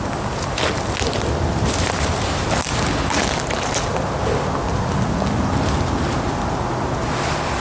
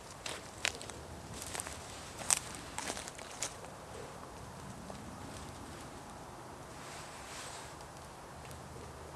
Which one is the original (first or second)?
first